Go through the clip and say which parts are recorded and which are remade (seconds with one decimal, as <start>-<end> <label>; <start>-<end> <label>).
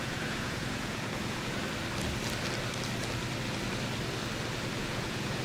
0.0-1.6 remade; 1.6-4.8 recorded; 4.8-5.4 remade